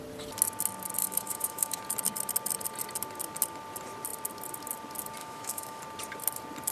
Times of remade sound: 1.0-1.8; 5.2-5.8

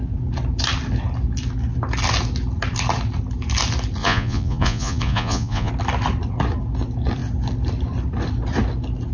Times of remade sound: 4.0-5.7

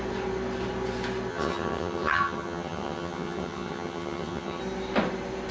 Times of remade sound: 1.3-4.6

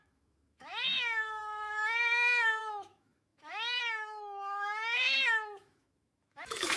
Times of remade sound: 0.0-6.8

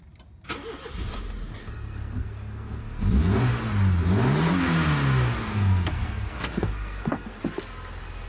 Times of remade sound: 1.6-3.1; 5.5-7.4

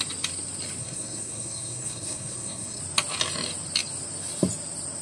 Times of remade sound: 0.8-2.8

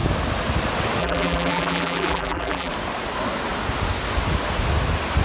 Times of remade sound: 1.0-2.7

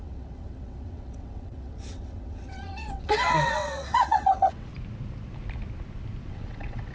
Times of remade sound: 0.0-4.7; 6.3-6.9